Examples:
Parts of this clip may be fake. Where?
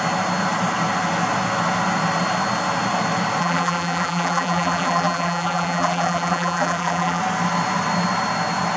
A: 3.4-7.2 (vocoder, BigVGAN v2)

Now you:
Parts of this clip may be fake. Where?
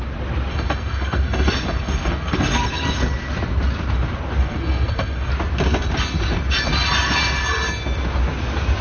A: 0.5-2.9 (codec, SNAC); 4.4-5.3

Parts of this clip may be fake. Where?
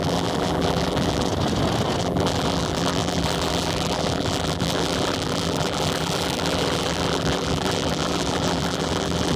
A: 0.0-1.3 (vocoder, BigVGAN v2); 2.0-9.4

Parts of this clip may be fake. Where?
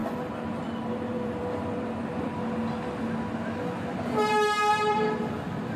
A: 0.0-2.3 (vocoder, BigVGAN v2); 4.7-5.8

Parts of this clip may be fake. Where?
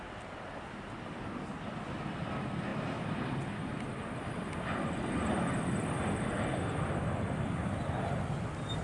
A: none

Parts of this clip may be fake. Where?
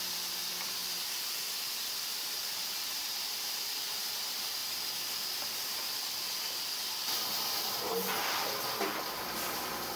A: 0.0-0.8 (vocoder, BigVGAN v2); 1.8-4.6; 9.3-10.0